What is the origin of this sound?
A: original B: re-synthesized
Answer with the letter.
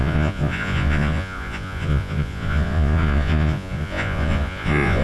B